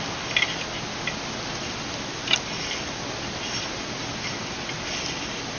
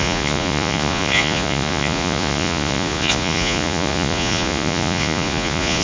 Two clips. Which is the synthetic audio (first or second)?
second